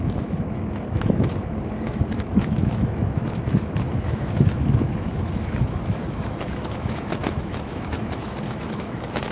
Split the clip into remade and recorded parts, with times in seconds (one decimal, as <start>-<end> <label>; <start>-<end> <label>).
0.0-9.3 remade